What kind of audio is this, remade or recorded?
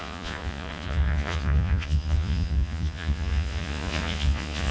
remade